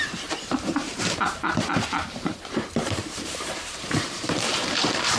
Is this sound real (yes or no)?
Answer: no